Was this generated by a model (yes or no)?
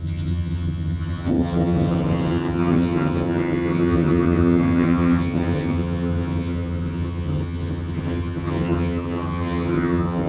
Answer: yes